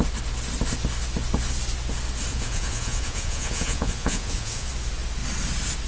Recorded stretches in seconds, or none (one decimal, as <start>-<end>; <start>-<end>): 0.0-2.3; 4.7-5.9

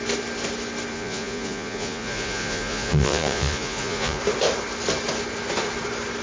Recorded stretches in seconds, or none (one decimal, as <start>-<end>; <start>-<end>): 0.0-0.9; 4.2-6.2

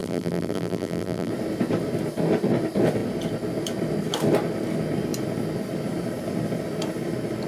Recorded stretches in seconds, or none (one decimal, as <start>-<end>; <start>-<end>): 1.3-7.5

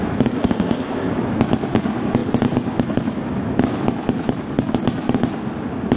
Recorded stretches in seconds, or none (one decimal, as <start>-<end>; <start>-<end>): 0.0-0.4; 1.1-6.0

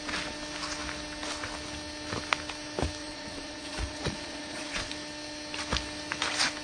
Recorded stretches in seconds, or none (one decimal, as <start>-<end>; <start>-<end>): 0.0-3.0; 4.9-6.6